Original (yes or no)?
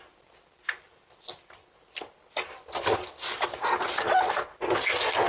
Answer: yes